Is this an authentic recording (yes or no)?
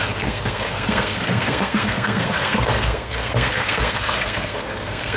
no